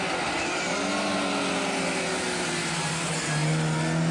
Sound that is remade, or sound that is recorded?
recorded